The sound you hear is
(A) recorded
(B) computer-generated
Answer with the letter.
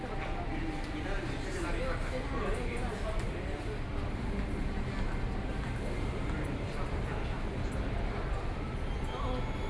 A